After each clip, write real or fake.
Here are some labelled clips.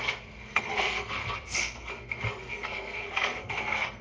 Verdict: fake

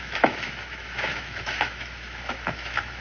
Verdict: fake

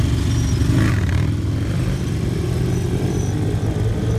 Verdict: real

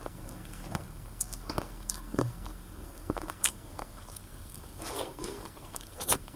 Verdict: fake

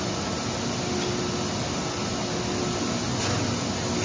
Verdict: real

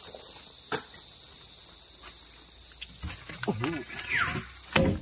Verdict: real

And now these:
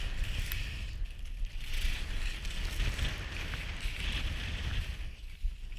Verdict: real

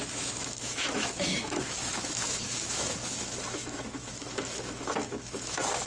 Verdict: fake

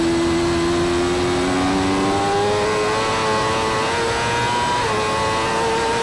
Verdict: real